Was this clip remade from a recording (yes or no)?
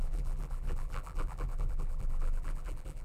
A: yes